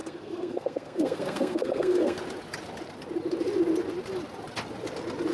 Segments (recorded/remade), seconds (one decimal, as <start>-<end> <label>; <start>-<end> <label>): 0.0-2.2 remade; 2.2-5.3 recorded

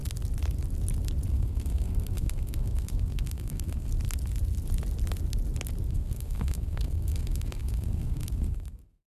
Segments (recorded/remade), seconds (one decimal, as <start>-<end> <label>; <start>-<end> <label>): 0.0-1.3 recorded; 1.3-3.9 remade; 3.9-5.9 recorded; 5.9-9.2 remade

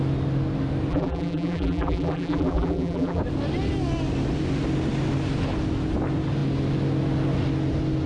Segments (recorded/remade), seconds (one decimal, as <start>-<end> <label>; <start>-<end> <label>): 0.0-0.9 recorded; 0.9-3.2 remade; 3.2-8.1 recorded

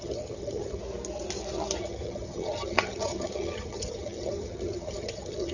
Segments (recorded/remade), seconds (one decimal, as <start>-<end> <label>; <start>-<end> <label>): 0.0-0.8 remade; 0.8-1.8 recorded; 1.8-5.5 remade